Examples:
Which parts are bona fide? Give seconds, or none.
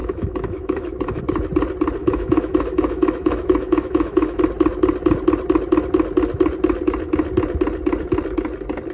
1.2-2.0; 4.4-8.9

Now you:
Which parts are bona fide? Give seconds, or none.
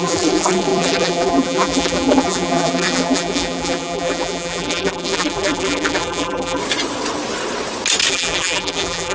6.6-8.1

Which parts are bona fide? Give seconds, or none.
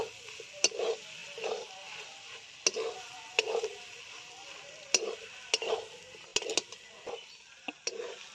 0.0-8.3